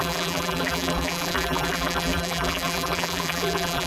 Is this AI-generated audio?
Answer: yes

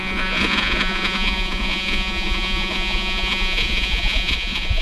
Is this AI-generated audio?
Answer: yes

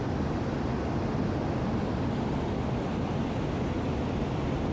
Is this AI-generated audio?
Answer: no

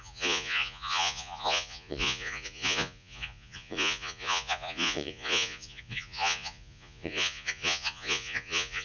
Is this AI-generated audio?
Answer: yes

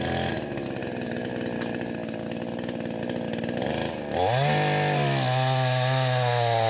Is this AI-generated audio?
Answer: no